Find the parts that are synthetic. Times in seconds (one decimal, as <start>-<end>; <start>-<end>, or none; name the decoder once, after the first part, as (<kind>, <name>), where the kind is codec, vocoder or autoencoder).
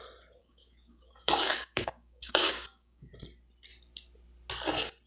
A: 0.4-3.1 (codec, DAC)